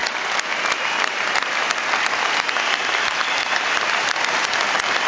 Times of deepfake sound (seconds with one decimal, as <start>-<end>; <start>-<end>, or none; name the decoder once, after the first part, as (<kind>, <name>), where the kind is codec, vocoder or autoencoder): 2.8-5.1 (vocoder, BigVGAN v2)